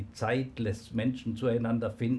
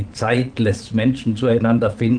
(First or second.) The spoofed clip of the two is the second